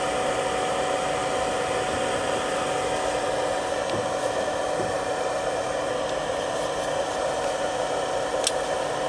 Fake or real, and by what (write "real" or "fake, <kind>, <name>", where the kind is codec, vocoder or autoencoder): real